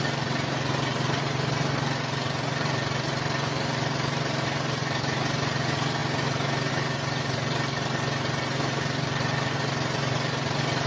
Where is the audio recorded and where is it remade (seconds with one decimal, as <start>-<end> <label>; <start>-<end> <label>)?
0.0-6.0 remade; 6.0-6.7 recorded; 6.7-10.9 remade